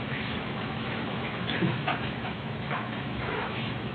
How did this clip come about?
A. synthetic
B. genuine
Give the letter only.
A